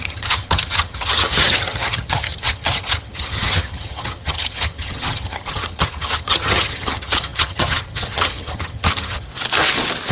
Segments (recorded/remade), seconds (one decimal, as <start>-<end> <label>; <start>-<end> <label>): 0.0-9.3 remade; 9.3-10.1 recorded

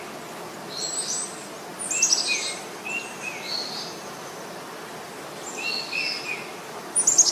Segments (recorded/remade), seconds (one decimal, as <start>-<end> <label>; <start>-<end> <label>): 0.0-7.3 recorded